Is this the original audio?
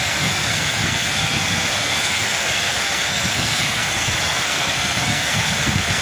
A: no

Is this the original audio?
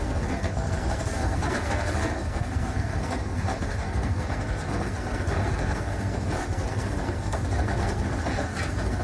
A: no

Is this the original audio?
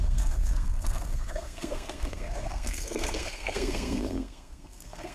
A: no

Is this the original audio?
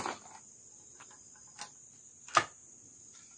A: yes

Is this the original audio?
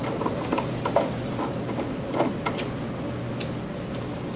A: yes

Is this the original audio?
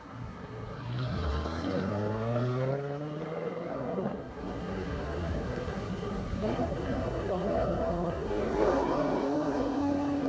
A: no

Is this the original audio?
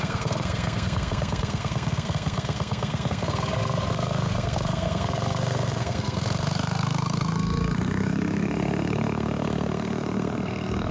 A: no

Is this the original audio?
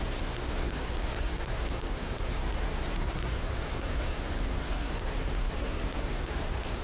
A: no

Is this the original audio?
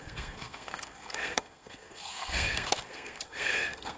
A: no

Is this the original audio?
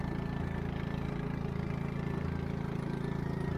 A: yes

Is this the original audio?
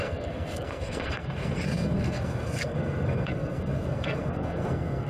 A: no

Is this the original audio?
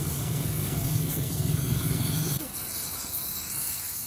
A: no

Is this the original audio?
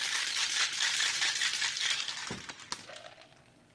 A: yes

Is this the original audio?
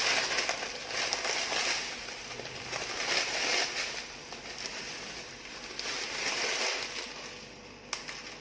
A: yes